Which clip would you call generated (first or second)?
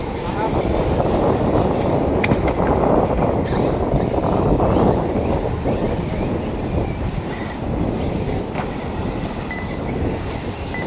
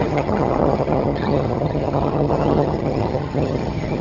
second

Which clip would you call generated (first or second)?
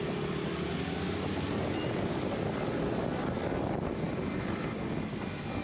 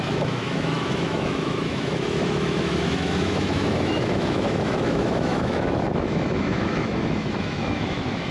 second